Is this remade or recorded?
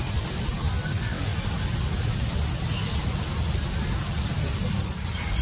recorded